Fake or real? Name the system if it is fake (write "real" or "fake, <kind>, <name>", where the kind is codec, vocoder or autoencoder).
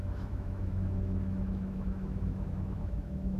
fake, autoencoder, DAC-VAE